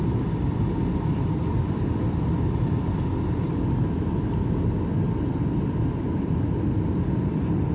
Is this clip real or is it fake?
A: fake